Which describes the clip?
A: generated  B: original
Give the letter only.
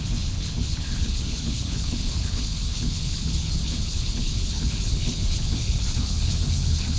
A